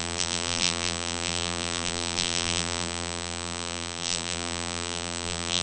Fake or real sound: fake